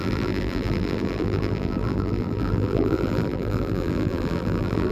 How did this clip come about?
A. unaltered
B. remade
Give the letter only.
B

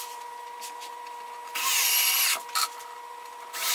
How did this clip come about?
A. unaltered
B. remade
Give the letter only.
B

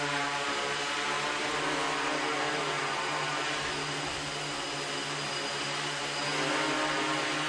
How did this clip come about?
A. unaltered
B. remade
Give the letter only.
A